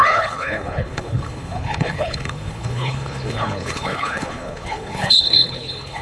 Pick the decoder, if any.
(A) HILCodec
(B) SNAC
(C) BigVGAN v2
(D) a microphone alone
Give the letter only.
A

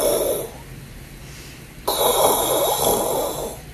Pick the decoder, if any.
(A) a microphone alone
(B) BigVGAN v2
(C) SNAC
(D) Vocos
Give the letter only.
A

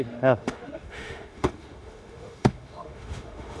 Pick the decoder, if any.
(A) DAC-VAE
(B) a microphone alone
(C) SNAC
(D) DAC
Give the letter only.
A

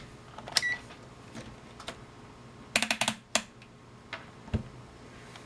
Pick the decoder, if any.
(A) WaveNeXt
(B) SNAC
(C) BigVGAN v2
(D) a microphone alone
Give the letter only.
D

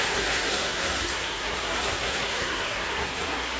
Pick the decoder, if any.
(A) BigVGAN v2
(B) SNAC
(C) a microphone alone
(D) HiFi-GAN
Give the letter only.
B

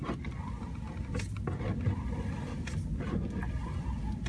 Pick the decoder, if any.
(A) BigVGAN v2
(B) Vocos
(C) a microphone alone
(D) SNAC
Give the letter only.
C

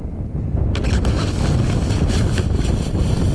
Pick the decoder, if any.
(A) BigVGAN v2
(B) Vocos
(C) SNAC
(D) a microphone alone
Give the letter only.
D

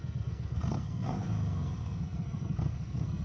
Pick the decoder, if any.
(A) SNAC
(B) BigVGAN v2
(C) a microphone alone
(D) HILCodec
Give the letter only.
A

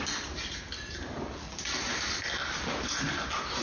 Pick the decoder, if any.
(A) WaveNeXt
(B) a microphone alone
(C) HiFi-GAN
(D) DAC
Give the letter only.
B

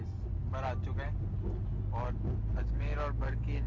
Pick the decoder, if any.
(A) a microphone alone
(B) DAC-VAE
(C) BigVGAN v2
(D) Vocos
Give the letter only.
A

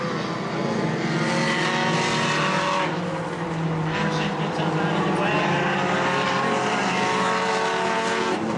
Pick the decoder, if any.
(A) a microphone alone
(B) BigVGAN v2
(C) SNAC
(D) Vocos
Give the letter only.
A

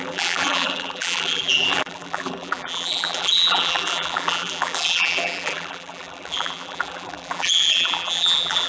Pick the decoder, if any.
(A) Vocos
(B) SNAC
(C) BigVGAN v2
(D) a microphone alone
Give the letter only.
C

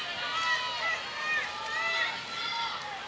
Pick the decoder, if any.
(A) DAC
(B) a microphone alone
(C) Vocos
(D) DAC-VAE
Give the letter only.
B